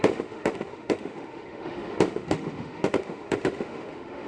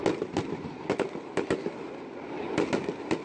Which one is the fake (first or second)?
first